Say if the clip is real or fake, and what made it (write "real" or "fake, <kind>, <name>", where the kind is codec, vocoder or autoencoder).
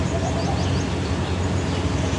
real